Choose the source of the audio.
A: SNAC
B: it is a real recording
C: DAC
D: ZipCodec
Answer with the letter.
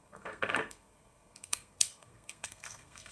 A